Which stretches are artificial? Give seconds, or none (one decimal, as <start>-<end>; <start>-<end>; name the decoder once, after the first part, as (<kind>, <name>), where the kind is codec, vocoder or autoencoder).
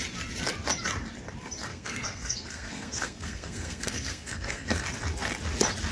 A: 1.7-4.8 (codec, SNAC)